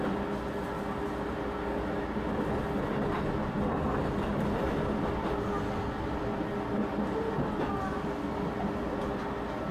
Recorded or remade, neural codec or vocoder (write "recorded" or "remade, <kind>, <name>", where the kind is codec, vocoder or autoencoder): recorded